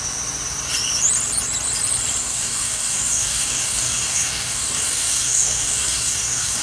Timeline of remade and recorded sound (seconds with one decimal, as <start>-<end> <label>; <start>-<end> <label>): 0.0-2.2 recorded; 2.2-6.6 remade